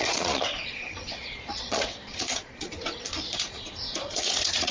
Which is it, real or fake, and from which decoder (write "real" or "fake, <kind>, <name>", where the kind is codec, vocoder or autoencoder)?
fake, vocoder, Vocos